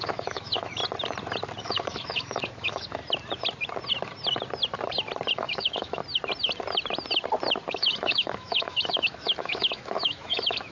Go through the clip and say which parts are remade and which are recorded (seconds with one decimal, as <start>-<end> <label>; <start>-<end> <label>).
0.0-0.8 remade; 0.8-1.6 recorded; 1.6-3.0 remade; 3.0-5.3 recorded; 5.3-6.0 remade; 6.0-7.7 recorded; 7.7-10.7 remade